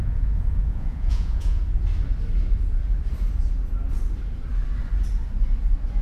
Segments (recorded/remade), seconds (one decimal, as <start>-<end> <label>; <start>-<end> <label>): 0.0-1.6 remade; 1.6-6.0 recorded